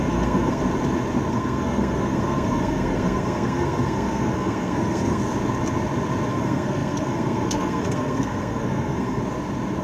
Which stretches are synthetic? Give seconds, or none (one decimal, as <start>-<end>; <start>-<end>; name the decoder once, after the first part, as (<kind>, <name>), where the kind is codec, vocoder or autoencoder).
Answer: 0.0-0.6 (codec, SNAC); 1.3-5.2; 6.3-9.2